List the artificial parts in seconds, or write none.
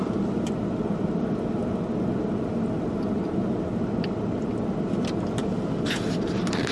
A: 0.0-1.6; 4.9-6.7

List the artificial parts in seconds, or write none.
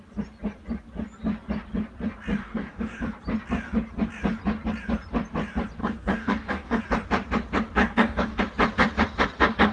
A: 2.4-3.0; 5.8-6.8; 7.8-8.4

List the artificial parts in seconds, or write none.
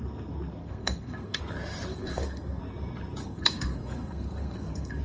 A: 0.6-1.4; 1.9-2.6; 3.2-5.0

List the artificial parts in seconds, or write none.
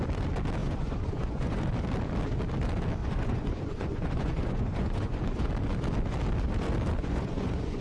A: 0.6-1.7; 3.0-5.5; 7.0-7.8